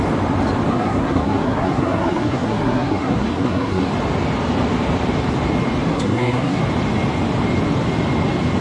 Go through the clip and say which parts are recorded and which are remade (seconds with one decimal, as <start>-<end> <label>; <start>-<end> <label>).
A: 0.0-0.7 recorded; 0.7-3.9 remade; 3.9-5.9 recorded; 5.9-6.6 remade; 6.6-8.6 recorded